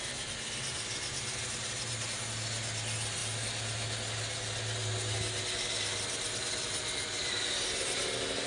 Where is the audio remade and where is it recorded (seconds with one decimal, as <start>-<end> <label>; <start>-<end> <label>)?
0.0-8.5 recorded